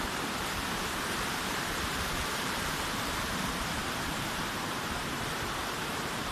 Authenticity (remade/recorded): remade